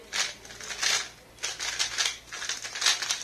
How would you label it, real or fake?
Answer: real